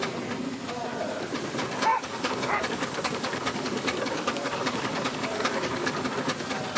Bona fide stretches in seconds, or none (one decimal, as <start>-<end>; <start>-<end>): 0.0-1.9; 6.0-6.8